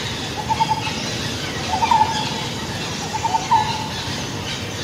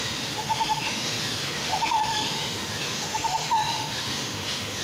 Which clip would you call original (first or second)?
first